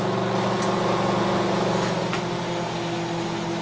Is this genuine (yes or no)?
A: yes